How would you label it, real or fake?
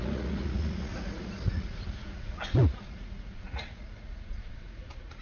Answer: fake